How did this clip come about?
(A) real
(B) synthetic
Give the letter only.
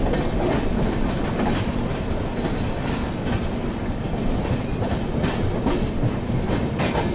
A